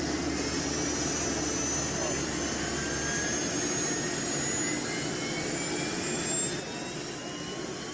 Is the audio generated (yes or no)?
no